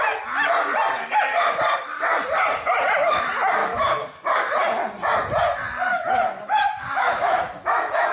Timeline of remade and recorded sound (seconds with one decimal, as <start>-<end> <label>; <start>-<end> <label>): 0.0-3.6 recorded; 3.6-4.5 remade; 4.5-5.9 recorded; 5.9-8.1 remade